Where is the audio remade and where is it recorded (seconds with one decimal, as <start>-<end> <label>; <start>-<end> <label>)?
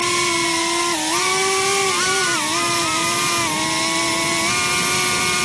0.0-5.4 recorded